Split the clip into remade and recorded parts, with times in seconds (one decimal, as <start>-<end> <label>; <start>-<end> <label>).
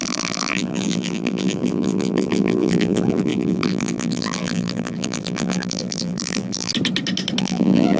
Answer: 0.0-6.7 remade; 6.7-7.4 recorded; 7.4-8.0 remade